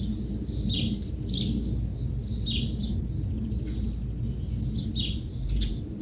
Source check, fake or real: real